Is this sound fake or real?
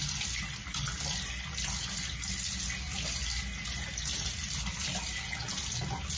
real